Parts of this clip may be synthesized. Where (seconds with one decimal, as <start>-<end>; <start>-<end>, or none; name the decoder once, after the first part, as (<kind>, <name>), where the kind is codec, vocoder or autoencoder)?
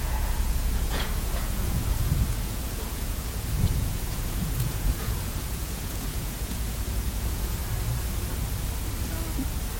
0.0-7.6 (vocoder, Vocos)